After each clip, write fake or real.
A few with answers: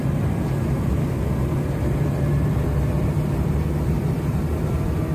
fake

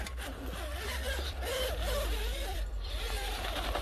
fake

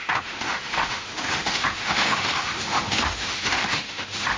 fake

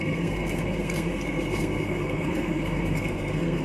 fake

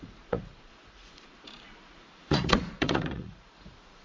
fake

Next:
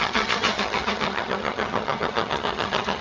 fake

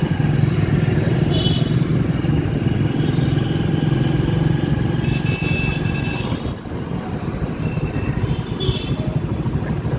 real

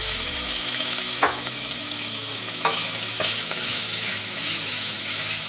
fake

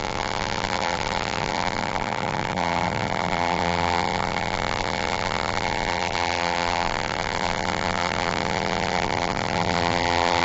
fake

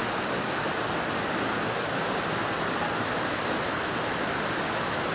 real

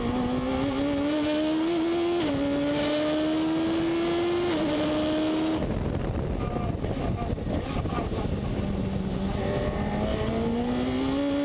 real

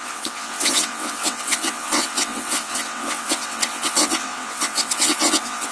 fake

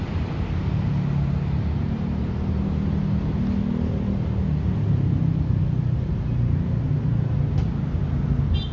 real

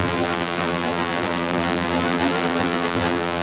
fake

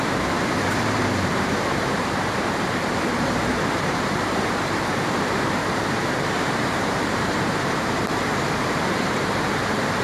fake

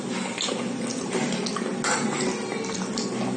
real